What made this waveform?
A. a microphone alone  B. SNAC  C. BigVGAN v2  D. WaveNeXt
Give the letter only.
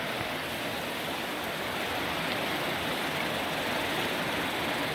A